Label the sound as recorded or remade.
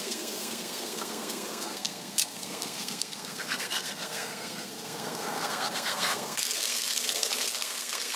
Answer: remade